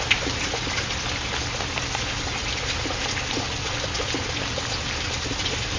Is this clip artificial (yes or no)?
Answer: no